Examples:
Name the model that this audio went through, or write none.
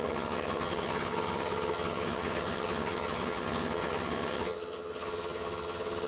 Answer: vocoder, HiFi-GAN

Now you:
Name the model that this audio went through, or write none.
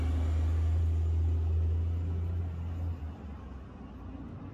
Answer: none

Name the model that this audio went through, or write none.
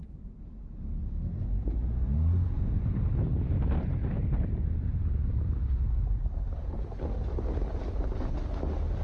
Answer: none